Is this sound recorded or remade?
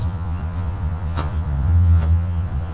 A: remade